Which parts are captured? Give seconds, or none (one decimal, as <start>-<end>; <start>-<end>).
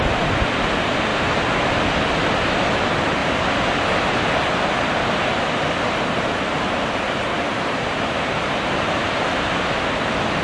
0.0-1.1; 1.7-7.3; 9.3-10.4